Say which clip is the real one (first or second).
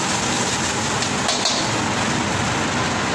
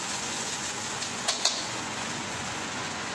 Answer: first